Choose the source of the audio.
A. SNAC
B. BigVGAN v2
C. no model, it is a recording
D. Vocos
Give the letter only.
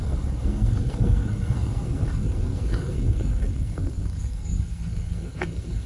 A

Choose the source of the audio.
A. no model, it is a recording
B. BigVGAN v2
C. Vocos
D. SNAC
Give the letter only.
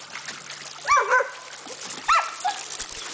A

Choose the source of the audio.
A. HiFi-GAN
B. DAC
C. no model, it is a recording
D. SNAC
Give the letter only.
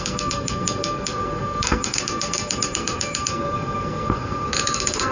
D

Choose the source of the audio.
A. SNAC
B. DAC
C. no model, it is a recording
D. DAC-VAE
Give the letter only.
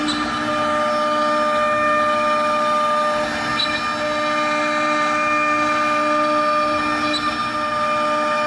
C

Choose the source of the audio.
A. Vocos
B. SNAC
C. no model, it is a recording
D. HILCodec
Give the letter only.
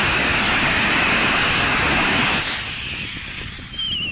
C